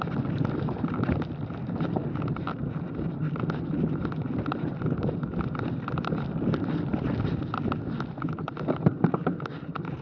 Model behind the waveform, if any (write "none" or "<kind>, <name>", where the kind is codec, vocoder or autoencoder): none